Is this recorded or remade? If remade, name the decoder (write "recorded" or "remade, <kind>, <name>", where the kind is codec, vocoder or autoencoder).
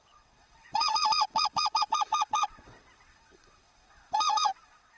remade, vocoder, WaveNeXt